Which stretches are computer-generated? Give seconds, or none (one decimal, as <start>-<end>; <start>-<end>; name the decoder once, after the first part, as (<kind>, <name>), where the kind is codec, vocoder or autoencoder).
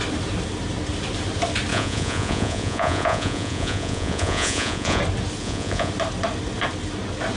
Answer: 1.7-5.0 (vocoder, Vocos); 5.4-5.9